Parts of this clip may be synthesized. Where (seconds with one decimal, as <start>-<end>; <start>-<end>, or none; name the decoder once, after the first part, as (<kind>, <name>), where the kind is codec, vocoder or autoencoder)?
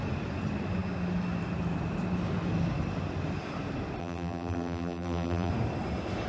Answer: 4.0-5.5 (vocoder, BigVGAN v2)